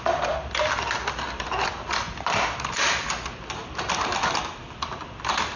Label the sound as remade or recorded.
remade